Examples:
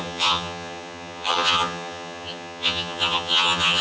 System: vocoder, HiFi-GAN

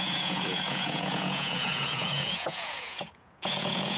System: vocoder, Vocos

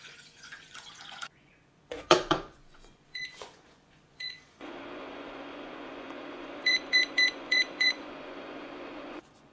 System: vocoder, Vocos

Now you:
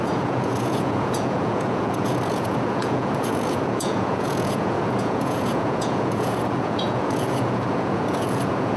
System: vocoder, Vocos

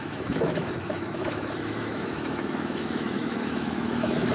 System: autoencoder, DAC-VAE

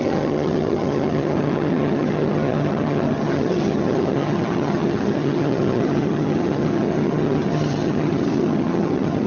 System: vocoder, HiFi-GAN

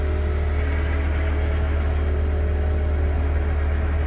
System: none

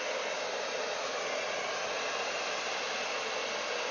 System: none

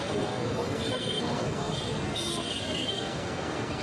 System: codec, SNAC